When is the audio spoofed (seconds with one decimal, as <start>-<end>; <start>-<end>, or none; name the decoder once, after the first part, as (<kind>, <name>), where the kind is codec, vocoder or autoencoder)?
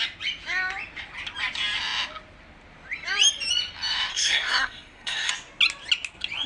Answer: 4.1-5.3 (codec, SNAC)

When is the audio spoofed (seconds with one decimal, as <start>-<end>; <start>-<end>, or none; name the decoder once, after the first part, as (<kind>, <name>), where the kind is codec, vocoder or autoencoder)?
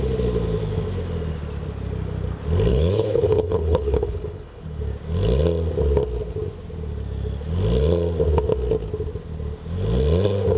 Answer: 2.7-4.8 (codec, HILCodec)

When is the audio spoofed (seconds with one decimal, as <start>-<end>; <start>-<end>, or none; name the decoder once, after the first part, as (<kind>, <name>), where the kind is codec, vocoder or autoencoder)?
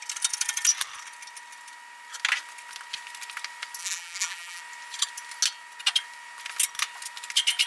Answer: 3.8-4.6 (vocoder, BigVGAN v2)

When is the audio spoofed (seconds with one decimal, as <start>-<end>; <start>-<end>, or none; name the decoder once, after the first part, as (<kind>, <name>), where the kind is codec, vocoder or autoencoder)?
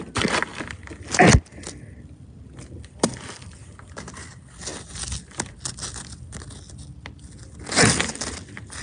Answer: none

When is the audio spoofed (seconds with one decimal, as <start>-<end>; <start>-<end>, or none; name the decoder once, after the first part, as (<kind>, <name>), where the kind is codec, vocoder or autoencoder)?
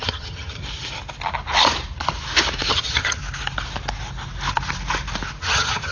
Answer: 0.0-0.6 (vocoder, HiFi-GAN); 2.7-3.2; 5.4-5.9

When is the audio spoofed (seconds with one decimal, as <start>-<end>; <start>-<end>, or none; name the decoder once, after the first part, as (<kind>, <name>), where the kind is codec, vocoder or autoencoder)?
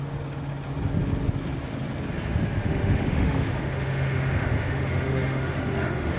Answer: 2.6-6.2 (autoencoder, DAC-VAE)